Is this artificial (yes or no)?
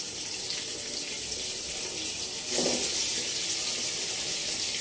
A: no